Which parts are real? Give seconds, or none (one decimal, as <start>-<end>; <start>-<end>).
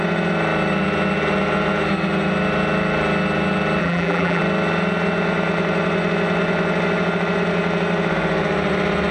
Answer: 0.0-3.8; 4.4-9.1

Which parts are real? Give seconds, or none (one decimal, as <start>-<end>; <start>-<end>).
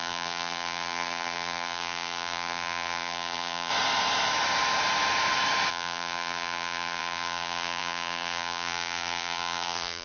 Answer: 3.7-5.7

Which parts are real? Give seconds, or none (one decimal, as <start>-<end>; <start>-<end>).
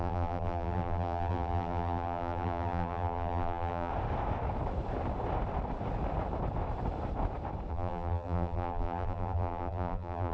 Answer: 3.9-7.7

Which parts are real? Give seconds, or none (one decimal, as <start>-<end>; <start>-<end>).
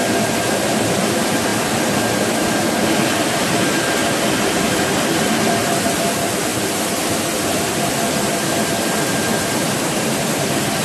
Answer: 0.0-1.5; 3.9-5.6; 6.1-6.5; 10.0-10.8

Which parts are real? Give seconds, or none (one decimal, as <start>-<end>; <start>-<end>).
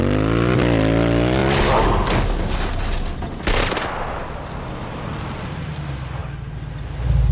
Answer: 0.0-7.3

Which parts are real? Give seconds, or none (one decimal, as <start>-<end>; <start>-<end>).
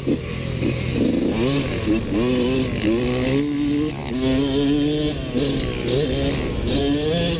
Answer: 0.0-7.4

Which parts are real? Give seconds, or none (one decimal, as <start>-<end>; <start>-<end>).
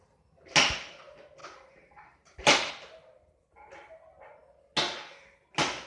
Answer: 0.0-1.4; 2.7-5.9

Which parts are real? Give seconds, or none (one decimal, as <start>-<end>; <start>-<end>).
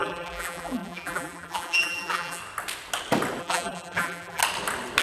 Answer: 2.4-3.4; 4.4-5.0